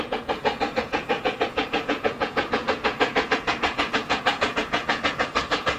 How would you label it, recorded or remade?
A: remade